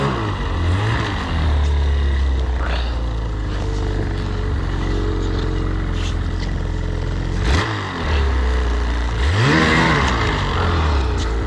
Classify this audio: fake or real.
real